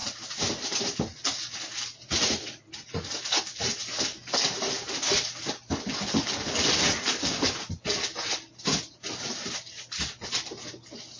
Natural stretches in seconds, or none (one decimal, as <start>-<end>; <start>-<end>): 0.0-1.9; 3.4-11.2